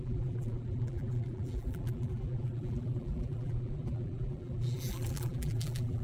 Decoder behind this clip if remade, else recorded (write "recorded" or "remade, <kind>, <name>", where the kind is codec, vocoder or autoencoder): remade, vocoder, BigVGAN v2